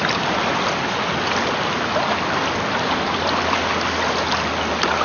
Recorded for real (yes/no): yes